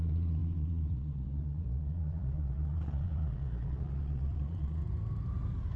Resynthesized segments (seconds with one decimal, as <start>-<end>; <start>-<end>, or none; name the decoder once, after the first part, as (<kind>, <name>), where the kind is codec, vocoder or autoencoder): 0.0-4.8 (vocoder, Vocos)